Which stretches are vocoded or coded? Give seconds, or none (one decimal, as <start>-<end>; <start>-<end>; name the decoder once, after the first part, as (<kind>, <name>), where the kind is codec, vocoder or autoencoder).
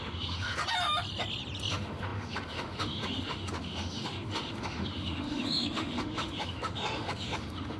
0.0-0.6 (autoencoder, DAC-VAE); 1.7-7.8